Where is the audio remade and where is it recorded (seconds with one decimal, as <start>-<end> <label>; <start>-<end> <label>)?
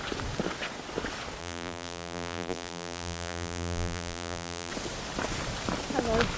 0.0-1.4 recorded; 1.4-4.7 remade; 4.7-6.4 recorded